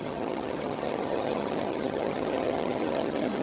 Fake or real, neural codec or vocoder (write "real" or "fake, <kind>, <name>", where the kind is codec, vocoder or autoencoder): fake, vocoder, HiFi-GAN